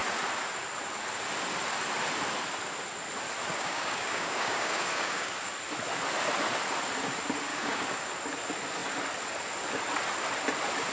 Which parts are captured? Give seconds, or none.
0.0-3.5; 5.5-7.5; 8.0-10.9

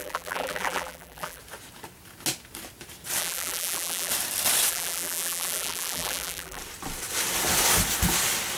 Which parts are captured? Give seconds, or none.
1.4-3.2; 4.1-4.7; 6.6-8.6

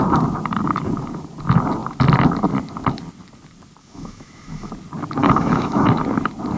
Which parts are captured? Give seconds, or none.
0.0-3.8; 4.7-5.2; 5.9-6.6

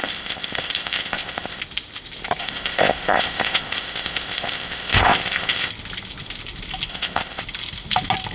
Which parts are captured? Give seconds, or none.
1.6-2.4; 5.7-6.9; 7.4-8.3

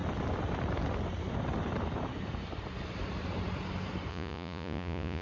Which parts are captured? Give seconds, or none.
0.0-4.1

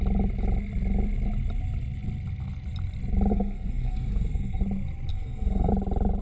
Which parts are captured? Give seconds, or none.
0.0-3.3; 4.6-5.1; 5.7-6.2

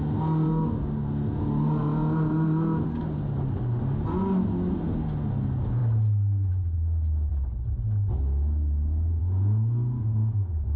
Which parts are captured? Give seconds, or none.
0.0-10.8